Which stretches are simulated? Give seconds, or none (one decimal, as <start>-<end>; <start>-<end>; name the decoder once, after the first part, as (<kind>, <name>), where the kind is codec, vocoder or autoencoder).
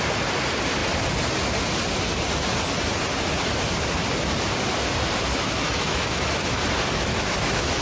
5.3-6.6 (autoencoder, DAC-VAE); 7.1-7.8